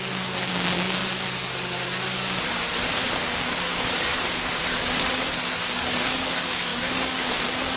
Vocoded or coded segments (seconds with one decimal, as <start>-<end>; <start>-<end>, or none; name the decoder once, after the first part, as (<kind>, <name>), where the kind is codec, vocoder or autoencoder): 0.0-1.0 (codec, DAC); 3.1-4.1; 4.6-7.8